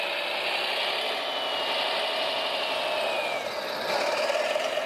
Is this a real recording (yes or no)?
yes